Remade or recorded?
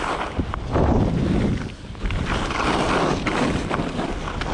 recorded